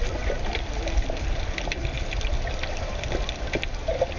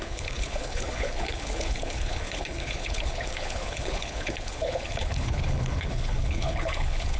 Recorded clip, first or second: first